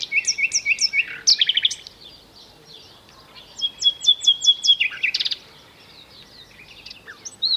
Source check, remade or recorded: recorded